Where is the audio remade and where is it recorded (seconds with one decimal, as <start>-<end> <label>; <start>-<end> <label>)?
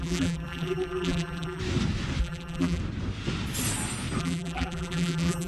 0.0-1.6 remade; 1.6-2.2 recorded; 2.2-2.8 remade; 2.8-4.2 recorded; 4.2-5.5 remade